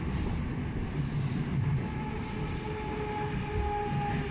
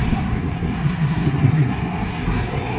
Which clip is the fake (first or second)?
second